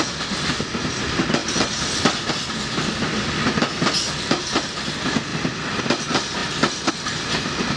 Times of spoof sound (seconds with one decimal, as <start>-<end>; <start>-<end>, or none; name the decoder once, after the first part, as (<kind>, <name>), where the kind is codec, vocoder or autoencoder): none